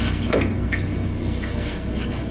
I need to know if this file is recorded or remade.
remade